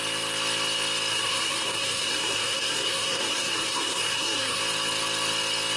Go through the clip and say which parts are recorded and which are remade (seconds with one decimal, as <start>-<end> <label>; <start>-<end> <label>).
0.0-1.1 recorded; 1.1-4.6 remade; 4.6-5.8 recorded